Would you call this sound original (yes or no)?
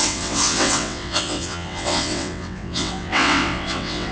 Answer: no